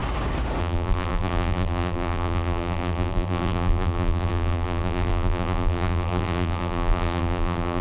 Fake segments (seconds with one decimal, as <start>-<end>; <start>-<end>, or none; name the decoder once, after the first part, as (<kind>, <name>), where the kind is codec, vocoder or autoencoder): 0.6-7.8 (vocoder, BigVGAN v2)